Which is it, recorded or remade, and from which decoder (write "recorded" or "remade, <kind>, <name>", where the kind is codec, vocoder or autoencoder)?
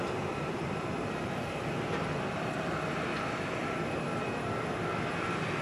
remade, vocoder, BigVGAN v2